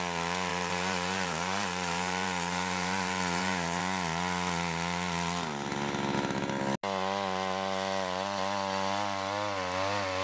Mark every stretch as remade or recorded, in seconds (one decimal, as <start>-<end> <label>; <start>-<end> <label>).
0.0-0.5 recorded; 0.5-3.8 remade; 3.8-10.2 recorded